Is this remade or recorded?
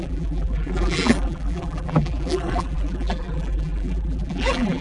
remade